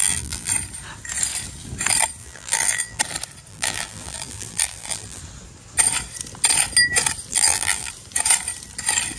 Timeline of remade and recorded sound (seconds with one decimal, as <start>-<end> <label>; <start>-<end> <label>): 0.0-0.5 remade; 0.5-2.2 recorded; 2.2-3.0 remade; 3.0-3.5 recorded; 3.5-5.2 remade; 5.2-7.3 recorded; 7.3-7.9 remade; 7.9-9.2 recorded